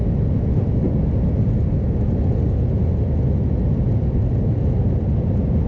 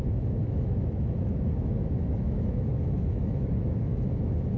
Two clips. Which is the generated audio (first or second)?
second